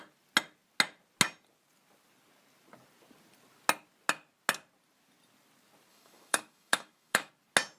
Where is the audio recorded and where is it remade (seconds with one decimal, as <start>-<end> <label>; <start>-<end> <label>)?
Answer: 0.0-5.9 recorded; 5.9-7.3 remade; 7.3-7.8 recorded